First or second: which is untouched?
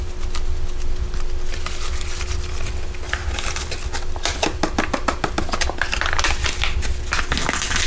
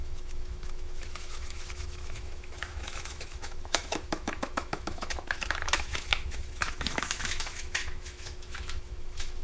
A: first